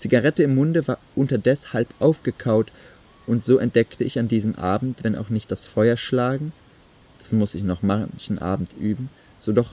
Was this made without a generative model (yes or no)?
yes